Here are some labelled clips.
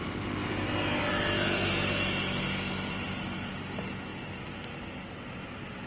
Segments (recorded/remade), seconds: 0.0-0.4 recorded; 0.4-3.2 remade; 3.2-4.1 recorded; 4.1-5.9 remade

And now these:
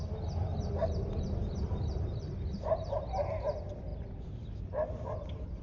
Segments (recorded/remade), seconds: 0.0-0.5 recorded; 0.5-3.0 remade; 3.0-5.6 recorded